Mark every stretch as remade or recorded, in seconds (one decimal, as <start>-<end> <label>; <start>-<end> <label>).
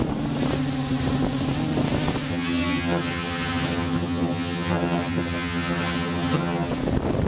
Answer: 0.0-2.3 recorded; 2.3-6.7 remade; 6.7-7.3 recorded